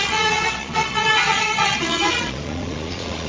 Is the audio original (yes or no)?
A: no